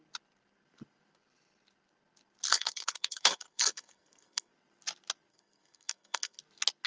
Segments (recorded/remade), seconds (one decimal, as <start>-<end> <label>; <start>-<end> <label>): 0.0-2.5 recorded; 2.5-4.5 remade; 4.5-5.3 recorded; 5.3-6.4 remade; 6.4-6.9 recorded